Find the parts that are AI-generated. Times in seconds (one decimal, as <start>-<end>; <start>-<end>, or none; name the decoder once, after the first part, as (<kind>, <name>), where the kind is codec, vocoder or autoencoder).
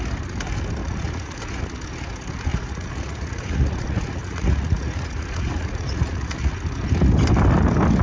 0.8-1.6 (vocoder, Vocos); 2.5-6.5